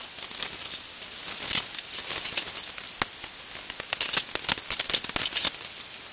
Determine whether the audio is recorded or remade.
recorded